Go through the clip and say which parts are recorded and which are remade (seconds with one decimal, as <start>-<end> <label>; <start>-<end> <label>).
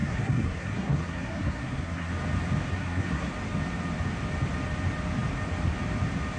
0.0-2.1 remade; 2.1-2.8 recorded; 2.8-3.3 remade; 3.3-6.4 recorded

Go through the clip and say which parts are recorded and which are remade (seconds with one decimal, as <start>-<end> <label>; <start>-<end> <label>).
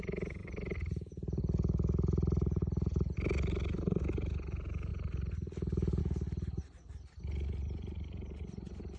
0.0-0.4 recorded; 0.4-1.4 remade; 1.4-9.0 recorded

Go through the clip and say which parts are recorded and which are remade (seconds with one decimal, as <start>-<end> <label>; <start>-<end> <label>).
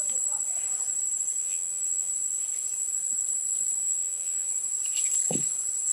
0.0-1.4 recorded; 1.4-2.1 remade; 2.1-3.8 recorded; 3.8-4.5 remade; 4.5-5.9 recorded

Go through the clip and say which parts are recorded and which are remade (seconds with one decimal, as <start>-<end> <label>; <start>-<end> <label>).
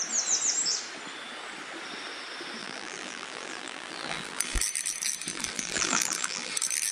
0.0-2.6 recorded; 2.6-4.6 remade; 4.6-5.3 recorded; 5.3-6.5 remade; 6.5-6.9 recorded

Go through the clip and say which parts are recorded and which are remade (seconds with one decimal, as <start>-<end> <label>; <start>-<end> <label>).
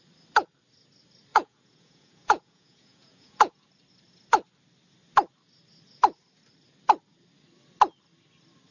0.0-1.3 recorded; 1.3-3.7 remade; 3.7-8.7 recorded